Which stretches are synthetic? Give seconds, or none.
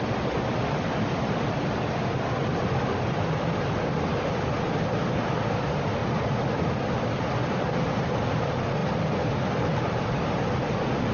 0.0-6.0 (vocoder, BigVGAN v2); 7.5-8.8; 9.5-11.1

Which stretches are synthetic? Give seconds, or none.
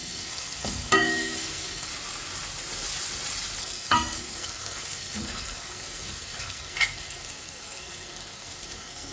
0.0-1.9 (codec, SNAC); 3.6-9.1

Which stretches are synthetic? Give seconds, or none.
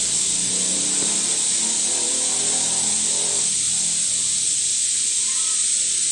none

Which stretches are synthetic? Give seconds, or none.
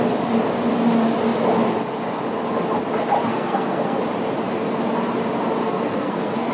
3.3-4.0 (codec, SNAC); 5.6-6.5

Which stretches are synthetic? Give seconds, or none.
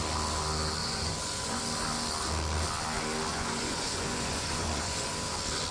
0.8-1.6 (vocoder, Vocos); 3.3-5.1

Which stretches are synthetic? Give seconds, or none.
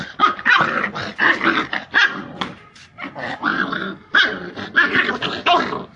1.1-3.0 (vocoder, BigVGAN v2); 3.5-5.1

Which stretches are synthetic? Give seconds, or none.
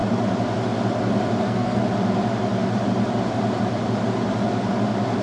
1.4-1.8 (codec, SNAC)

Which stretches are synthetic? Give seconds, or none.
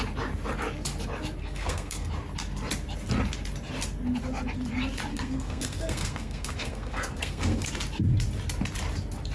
1.4-2.1 (codec, SNAC); 5.1-7.7